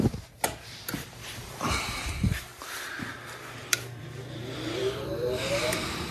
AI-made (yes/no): yes